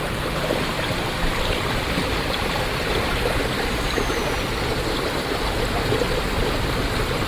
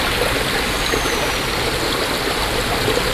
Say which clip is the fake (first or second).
first